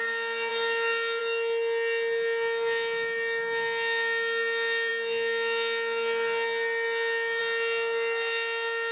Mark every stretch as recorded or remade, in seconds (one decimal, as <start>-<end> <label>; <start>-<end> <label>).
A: 0.0-8.9 recorded